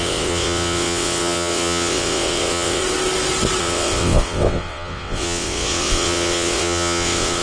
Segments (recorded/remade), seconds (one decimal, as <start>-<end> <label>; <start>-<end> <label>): 0.0-2.8 remade; 2.8-3.6 recorded; 3.6-7.4 remade